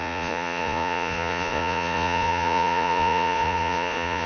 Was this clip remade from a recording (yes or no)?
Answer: yes